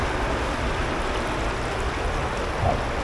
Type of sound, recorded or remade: recorded